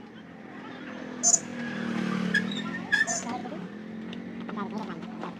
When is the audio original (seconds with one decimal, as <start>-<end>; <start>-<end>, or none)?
0.0-5.4